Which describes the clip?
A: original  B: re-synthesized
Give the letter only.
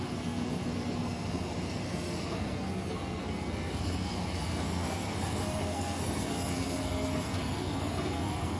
B